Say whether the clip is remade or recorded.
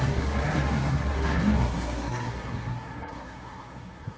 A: remade